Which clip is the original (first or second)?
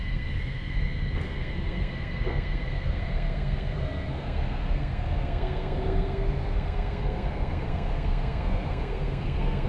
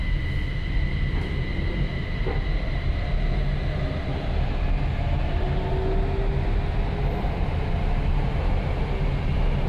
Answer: second